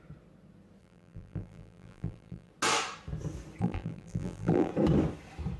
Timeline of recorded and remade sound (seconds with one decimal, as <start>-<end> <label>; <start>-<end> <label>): 0.0-0.8 recorded; 0.8-2.5 remade; 2.5-3.6 recorded; 3.6-4.7 remade; 4.7-5.6 recorded